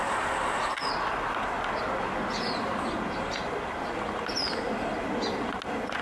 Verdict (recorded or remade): recorded